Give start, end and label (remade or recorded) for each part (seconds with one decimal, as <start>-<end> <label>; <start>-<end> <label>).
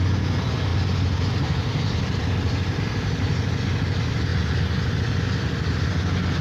0.0-6.4 recorded